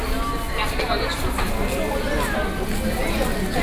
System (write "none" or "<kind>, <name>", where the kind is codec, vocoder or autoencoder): none